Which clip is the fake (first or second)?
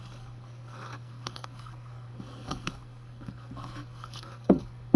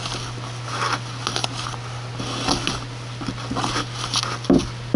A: first